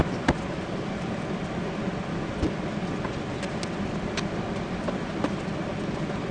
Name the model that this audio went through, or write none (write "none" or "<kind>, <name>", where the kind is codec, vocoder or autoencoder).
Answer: none